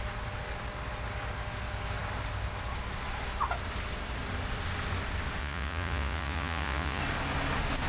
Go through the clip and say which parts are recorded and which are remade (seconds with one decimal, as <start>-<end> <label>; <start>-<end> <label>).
0.0-5.4 recorded; 5.4-7.0 remade; 7.0-7.9 recorded